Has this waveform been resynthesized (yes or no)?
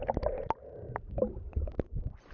no